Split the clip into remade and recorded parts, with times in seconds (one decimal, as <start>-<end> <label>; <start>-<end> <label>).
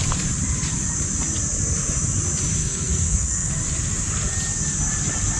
0.0-2.6 recorded; 2.6-3.5 remade; 3.5-5.4 recorded